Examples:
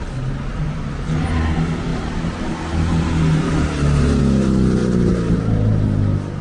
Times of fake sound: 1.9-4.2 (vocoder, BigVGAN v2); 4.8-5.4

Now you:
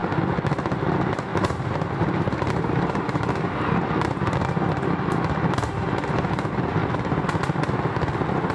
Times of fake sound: 1.3-3.0 (vocoder, BigVGAN v2); 6.8-7.6

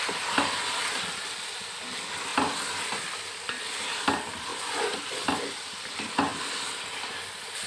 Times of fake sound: 4.5-5.0 (vocoder, Vocos)